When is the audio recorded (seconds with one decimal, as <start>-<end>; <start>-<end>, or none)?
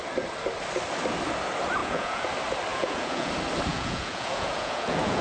0.0-1.8; 2.3-2.7; 3.3-3.7